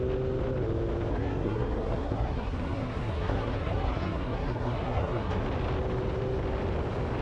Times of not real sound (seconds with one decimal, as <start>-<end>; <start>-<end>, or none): 1.1-5.4